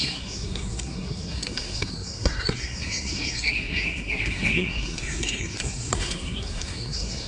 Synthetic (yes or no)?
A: yes